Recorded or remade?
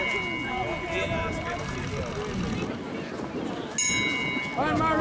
recorded